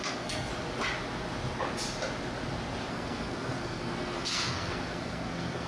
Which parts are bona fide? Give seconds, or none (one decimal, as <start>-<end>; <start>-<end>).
0.5-2.9

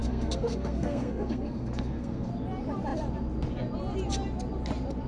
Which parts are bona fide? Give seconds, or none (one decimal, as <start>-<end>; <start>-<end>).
2.3-5.1